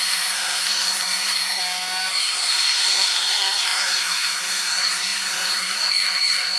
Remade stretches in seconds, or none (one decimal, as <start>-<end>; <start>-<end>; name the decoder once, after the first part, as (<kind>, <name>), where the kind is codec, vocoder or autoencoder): 0.0-1.6 (codec, SNAC); 2.1-6.6